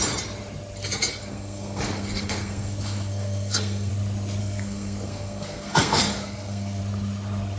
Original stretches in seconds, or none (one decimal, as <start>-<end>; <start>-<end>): 0.0-1.2; 3.9-4.4; 6.8-7.6